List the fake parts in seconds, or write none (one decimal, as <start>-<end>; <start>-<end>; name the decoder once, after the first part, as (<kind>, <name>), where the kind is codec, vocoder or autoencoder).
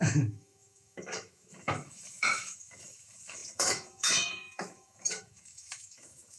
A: 0.0-6.4 (autoencoder, DAC-VAE)